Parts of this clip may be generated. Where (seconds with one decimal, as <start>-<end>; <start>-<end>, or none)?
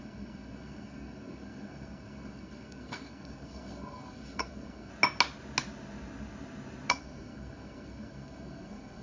0.0-4.9; 6.9-9.0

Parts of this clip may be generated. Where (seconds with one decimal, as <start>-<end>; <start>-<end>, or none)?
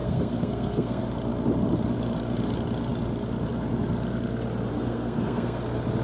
0.0-1.0; 4.7-5.6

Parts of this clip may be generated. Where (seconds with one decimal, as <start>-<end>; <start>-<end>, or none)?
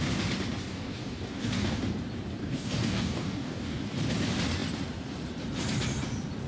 0.7-1.8; 2.4-3.8